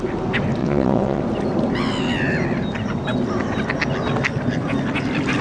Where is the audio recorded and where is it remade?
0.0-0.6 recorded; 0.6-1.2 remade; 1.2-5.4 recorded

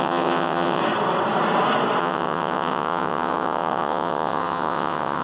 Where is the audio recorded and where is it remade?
0.0-0.8 remade; 0.8-2.0 recorded; 2.0-5.2 remade